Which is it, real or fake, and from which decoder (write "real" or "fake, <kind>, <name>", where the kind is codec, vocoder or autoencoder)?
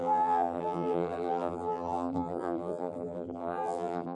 fake, vocoder, BigVGAN v2